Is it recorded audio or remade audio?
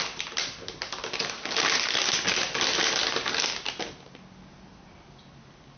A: recorded